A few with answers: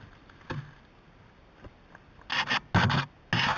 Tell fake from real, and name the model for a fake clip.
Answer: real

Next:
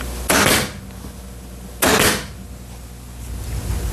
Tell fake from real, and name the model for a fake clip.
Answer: real